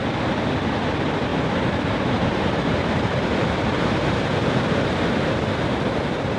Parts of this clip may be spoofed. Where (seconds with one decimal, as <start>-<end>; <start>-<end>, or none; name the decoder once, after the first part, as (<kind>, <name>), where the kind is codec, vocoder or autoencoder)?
1.3-5.1 (vocoder, BigVGAN v2)